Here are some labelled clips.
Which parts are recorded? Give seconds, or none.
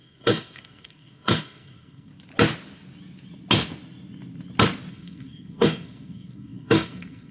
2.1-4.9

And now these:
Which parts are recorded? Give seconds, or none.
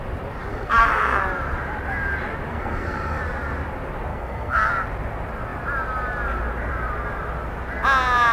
0.0-0.5; 1.2-2.5; 3.2-4.1; 4.7-8.3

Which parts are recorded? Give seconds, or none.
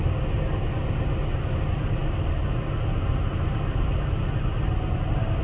0.0-5.4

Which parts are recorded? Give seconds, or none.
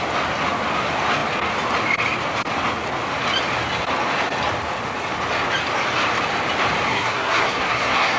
0.0-6.9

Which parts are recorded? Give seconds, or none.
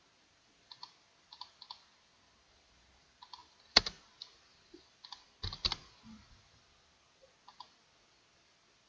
0.0-8.9